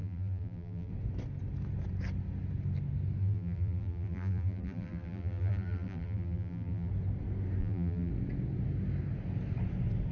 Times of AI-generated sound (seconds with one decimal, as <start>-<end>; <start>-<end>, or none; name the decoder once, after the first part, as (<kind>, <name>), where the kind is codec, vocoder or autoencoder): 0.0-0.9 (vocoder, BigVGAN v2); 3.2-6.9; 7.6-8.1